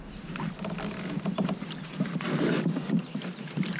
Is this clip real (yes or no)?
yes